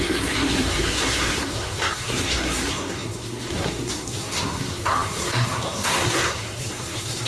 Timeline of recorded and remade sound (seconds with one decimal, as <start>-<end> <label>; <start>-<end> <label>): 0.0-7.3 remade